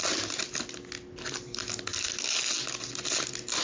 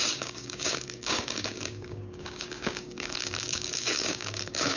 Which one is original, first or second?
first